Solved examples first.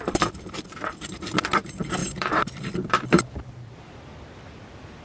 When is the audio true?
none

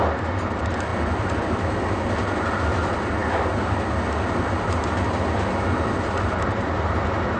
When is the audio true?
0.0-7.4

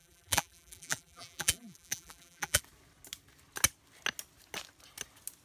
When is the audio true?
2.6-5.4